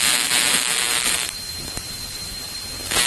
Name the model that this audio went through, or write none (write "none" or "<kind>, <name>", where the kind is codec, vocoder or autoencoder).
vocoder, BigVGAN v2